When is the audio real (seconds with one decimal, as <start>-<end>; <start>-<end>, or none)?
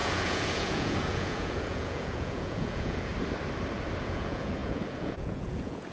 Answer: 3.1-4.0